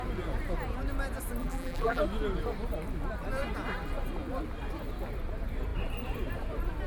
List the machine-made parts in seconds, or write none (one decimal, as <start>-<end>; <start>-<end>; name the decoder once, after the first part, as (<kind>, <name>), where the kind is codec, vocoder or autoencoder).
1.4-2.0 (vocoder, BigVGAN v2)